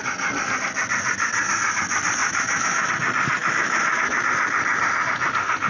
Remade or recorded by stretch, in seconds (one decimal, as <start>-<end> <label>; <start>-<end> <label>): 0.0-2.2 recorded; 2.2-2.9 remade; 2.9-3.4 recorded; 3.4-4.2 remade; 4.2-5.7 recorded

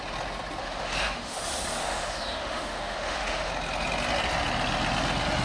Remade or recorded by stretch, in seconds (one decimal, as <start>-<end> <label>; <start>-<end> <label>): 0.0-0.6 recorded; 0.6-1.4 remade; 1.4-1.8 recorded; 1.8-3.5 remade; 3.5-5.4 recorded

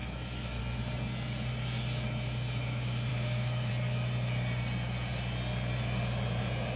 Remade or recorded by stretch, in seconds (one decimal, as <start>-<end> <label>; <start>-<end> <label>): 0.0-0.6 remade; 0.6-3.1 recorded; 3.1-3.7 remade; 3.7-6.8 recorded

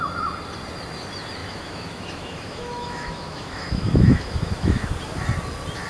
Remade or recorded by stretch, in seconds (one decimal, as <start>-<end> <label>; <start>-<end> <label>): 0.0-1.4 recorded; 1.4-4.9 remade; 4.9-5.9 recorded

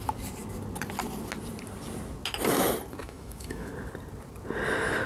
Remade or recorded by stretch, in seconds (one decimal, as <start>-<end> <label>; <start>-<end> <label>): 0.0-3.0 recorded; 3.0-3.7 remade; 3.7-5.1 recorded

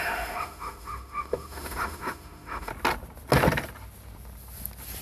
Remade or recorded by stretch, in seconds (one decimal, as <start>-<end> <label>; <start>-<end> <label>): 0.0-2.7 remade; 2.7-5.0 recorded